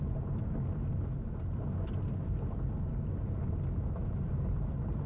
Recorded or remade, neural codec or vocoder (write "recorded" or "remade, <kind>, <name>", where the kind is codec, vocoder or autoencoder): recorded